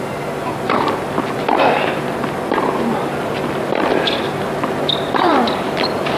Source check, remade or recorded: recorded